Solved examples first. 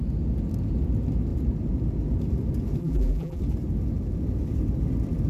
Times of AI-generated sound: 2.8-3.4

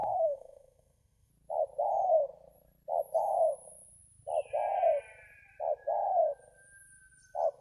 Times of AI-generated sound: 0.0-1.3

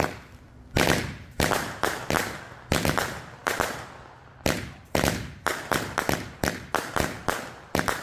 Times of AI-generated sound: none

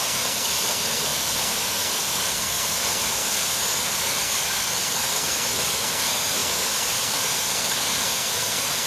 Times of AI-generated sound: 0.0-8.9

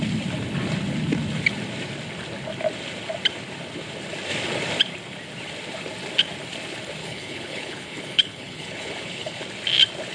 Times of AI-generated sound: 7.0-9.4

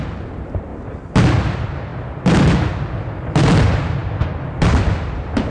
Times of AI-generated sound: none

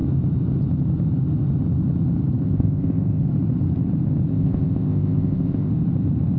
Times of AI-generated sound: 2.4-3.2; 4.3-5.7

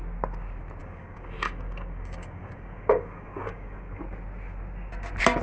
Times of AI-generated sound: 0.8-4.0